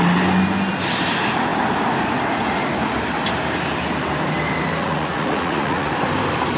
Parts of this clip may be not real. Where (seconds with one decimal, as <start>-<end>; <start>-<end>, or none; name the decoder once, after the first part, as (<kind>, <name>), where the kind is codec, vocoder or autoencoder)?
4.8-5.9 (vocoder, Vocos)